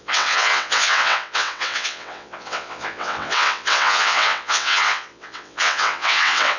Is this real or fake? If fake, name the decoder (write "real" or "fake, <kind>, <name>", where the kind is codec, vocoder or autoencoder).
fake, vocoder, WaveNeXt